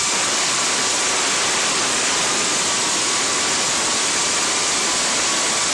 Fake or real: real